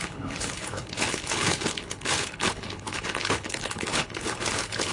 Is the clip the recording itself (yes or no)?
no